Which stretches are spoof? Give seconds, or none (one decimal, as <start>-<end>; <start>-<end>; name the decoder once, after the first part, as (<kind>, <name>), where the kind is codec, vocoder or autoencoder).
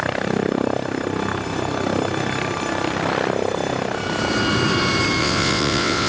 5.2-6.1 (vocoder, WaveNeXt)